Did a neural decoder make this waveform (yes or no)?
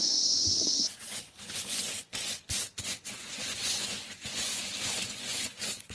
yes